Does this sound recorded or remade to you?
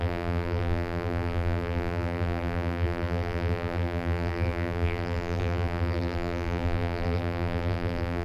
remade